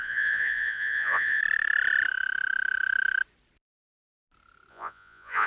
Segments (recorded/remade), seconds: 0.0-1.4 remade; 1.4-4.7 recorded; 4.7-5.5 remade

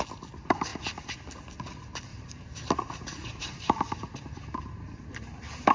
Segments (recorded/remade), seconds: 0.0-0.7 recorded; 0.7-1.2 remade; 1.2-2.1 recorded; 2.1-5.7 remade